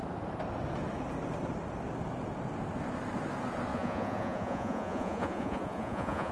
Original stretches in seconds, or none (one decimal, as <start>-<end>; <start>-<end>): 0.0-3.7